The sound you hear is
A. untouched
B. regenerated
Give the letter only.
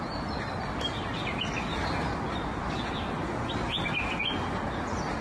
A